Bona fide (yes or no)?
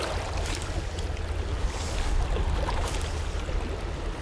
yes